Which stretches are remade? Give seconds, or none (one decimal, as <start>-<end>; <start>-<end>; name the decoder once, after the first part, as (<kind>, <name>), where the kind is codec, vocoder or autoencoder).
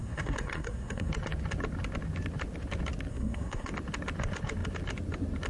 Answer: 0.0-1.1 (codec, SNAC); 3.1-3.7